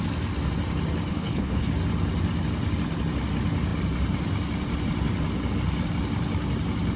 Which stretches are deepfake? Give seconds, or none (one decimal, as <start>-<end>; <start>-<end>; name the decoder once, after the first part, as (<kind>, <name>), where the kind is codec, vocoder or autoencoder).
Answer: 1.1-1.7 (codec, HILCodec)

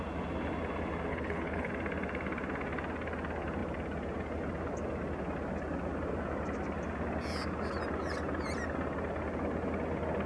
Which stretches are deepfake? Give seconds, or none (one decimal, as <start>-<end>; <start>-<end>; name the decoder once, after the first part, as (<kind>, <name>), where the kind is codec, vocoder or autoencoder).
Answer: 1.1-1.7 (codec, HILCodec)

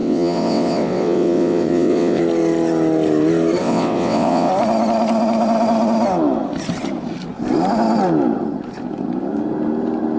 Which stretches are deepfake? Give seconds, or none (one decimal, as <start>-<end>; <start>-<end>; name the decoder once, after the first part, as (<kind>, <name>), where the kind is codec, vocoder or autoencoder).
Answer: 0.0-2.2 (vocoder, WaveNeXt); 3.6-4.5

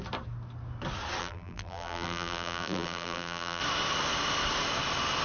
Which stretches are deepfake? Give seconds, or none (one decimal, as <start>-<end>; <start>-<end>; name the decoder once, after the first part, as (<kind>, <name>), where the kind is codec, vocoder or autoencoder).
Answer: 1.2-3.6 (vocoder, BigVGAN v2)

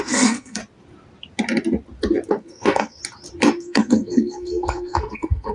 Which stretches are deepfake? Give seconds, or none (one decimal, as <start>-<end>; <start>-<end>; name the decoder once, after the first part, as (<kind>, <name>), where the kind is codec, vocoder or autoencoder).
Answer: 0.0-0.6 (codec, SNAC); 2.3-3.0; 3.6-5.5

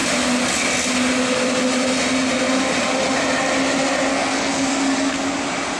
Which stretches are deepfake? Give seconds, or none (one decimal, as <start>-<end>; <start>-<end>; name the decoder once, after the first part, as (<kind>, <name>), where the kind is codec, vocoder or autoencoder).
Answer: 4.1-5.1 (codec, SNAC)